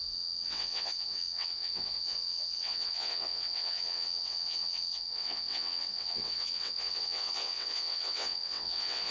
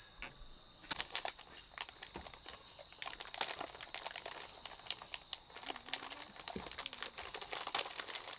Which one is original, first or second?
second